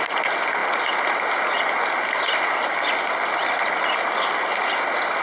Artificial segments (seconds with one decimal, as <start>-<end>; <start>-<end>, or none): none

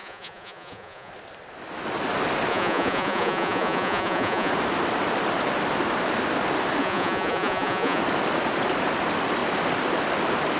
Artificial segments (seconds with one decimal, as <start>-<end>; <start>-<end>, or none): 0.0-1.1; 2.5-4.5; 6.8-8.0

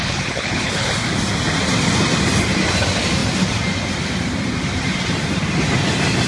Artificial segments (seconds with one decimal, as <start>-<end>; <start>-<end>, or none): 0.0-0.9

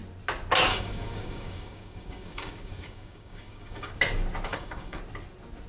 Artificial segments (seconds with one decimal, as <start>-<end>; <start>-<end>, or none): 0.7-3.9; 4.5-5.0

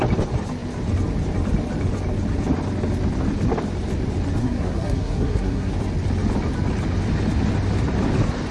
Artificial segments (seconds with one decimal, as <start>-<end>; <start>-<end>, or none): 4.4-5.7

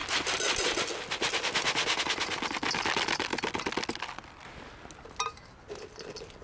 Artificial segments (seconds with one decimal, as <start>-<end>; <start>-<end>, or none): none